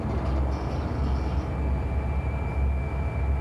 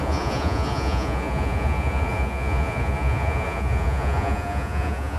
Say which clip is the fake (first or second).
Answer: second